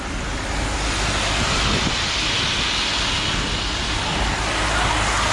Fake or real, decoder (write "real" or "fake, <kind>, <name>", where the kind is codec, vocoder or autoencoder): real